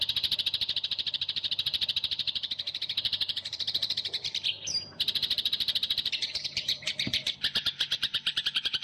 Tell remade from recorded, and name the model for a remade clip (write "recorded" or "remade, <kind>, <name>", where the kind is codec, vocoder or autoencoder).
remade, vocoder, BigVGAN v2